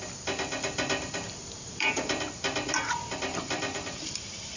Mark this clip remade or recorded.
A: remade